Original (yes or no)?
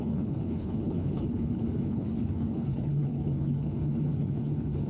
no